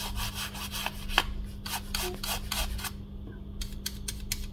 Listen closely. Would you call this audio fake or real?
real